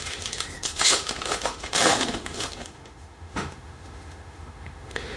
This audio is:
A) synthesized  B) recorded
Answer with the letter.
A